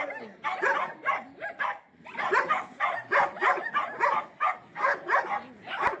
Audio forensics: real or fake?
real